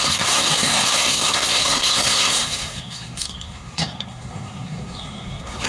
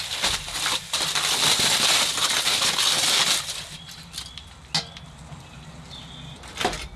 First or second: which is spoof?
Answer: first